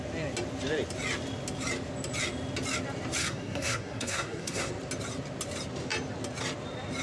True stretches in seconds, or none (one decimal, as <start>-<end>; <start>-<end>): 0.0-3.2; 4.7-7.0